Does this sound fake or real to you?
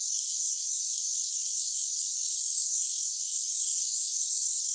fake